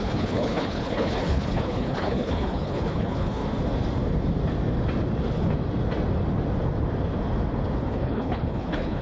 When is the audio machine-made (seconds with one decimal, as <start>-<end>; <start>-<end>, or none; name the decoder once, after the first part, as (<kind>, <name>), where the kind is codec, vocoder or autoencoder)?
0.0-3.4 (codec, HILCodec); 7.8-9.0